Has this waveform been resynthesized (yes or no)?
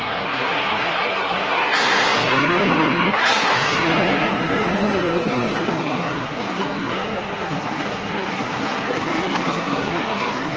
yes